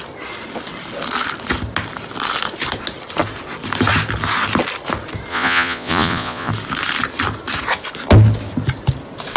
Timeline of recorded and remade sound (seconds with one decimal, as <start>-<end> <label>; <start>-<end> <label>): 0.0-5.3 recorded; 5.3-6.5 remade; 6.5-9.4 recorded